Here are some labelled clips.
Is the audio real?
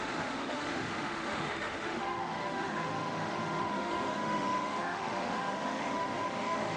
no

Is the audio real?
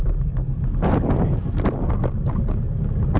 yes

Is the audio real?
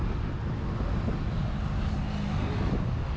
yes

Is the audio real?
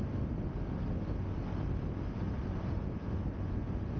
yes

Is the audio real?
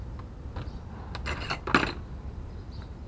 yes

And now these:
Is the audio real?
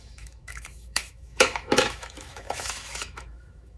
no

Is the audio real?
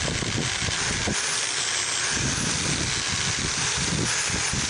yes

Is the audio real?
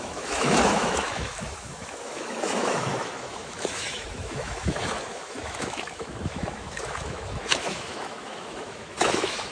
no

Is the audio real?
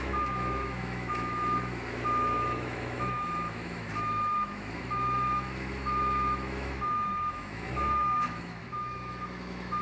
no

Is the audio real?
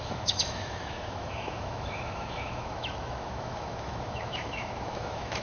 no